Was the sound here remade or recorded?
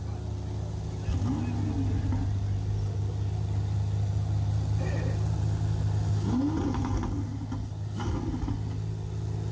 recorded